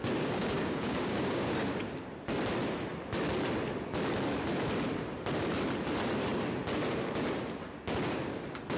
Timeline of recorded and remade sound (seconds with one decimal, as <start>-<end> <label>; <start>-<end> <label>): 0.0-1.7 remade; 1.7-8.8 recorded